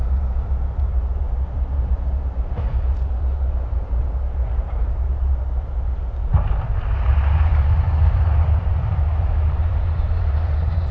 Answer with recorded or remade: remade